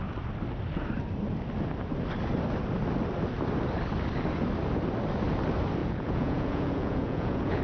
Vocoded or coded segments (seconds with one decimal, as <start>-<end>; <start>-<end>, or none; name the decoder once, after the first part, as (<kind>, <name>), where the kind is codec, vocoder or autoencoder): 5.8-7.6 (vocoder, Vocos)